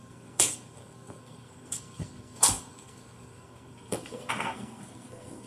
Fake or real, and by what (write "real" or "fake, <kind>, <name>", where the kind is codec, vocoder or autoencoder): fake, codec, SNAC